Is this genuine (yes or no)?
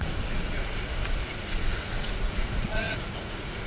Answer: no